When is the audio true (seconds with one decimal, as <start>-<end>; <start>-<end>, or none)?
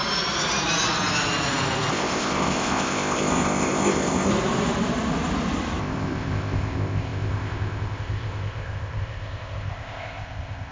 0.0-1.9; 4.3-5.8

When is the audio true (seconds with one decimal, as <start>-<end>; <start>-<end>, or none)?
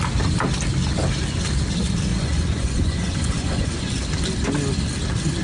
0.0-2.1; 3.9-5.4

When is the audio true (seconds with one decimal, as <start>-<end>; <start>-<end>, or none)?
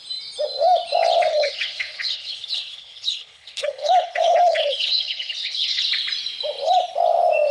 0.0-1.3; 5.8-7.5